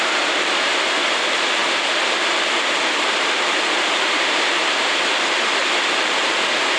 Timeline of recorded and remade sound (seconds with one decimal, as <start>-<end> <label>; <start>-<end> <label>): 0.0-1.6 recorded; 1.6-4.6 remade; 4.6-5.6 recorded; 5.6-6.2 remade; 6.2-6.8 recorded